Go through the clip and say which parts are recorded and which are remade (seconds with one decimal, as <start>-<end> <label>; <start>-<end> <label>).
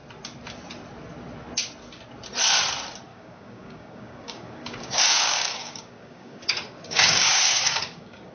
0.0-3.1 recorded; 3.1-8.3 remade